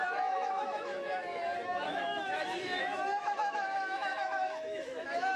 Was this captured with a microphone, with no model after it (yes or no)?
no